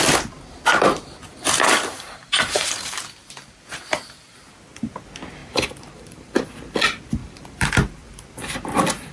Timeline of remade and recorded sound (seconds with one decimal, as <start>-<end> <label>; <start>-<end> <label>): 0.0-1.9 recorded; 1.9-3.0 remade; 3.0-5.4 recorded; 5.4-6.5 remade; 6.5-7.2 recorded; 7.2-7.7 remade; 7.7-9.1 recorded